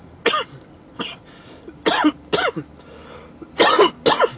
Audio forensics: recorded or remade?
recorded